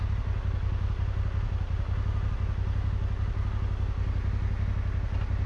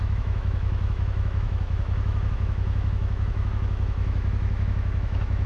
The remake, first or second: second